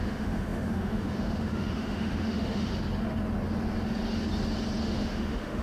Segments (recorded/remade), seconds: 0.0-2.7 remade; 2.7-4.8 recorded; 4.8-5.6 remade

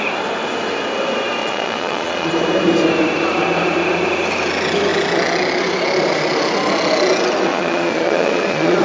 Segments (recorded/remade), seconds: 0.0-1.4 recorded; 1.4-2.3 remade; 2.3-7.5 recorded; 7.5-8.8 remade

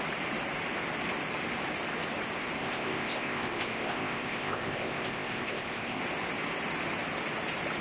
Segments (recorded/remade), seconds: 0.0-2.6 recorded; 2.6-6.0 remade; 6.0-7.8 recorded